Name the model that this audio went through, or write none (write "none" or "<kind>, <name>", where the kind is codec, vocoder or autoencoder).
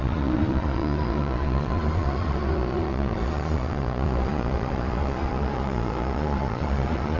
vocoder, Vocos